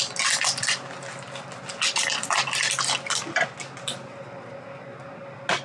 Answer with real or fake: real